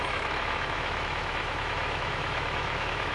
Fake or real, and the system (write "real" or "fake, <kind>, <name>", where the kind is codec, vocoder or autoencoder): fake, autoencoder, DAC-VAE